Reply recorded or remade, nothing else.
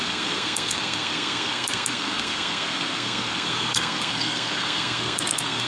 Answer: remade